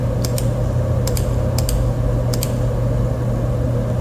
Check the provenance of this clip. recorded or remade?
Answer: recorded